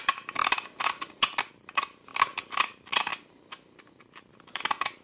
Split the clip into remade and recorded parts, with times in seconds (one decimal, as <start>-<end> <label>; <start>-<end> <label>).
0.0-0.4 remade; 0.4-1.5 recorded; 1.5-2.1 remade; 2.1-2.7 recorded; 2.7-5.0 remade